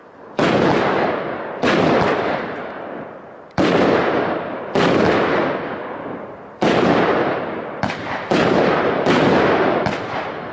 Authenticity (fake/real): real